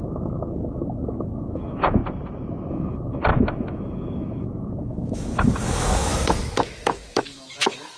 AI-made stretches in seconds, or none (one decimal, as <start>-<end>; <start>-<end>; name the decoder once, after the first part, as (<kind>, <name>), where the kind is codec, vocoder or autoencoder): 0.0-2.0 (autoencoder, DAC-VAE); 2.7-8.0